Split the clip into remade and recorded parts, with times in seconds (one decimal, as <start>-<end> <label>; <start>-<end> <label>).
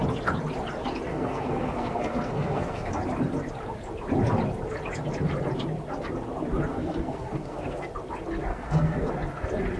0.0-1.1 recorded; 1.1-2.9 remade; 2.9-6.7 recorded; 6.7-7.9 remade; 7.9-8.5 recorded; 8.5-9.1 remade; 9.1-9.8 recorded